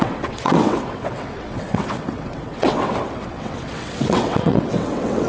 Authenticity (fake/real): fake